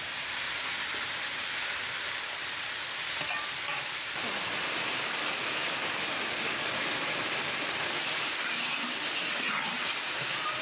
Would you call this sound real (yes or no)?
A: yes